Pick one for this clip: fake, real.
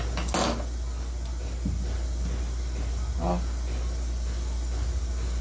real